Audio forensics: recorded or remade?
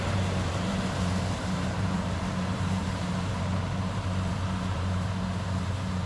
remade